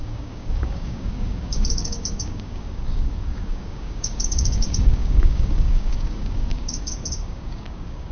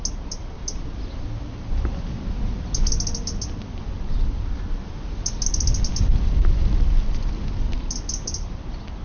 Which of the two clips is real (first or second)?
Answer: second